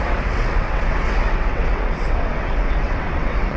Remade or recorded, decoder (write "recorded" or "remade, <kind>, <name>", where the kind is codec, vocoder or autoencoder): remade, vocoder, WaveNeXt